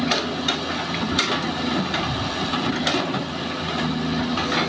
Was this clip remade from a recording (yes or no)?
no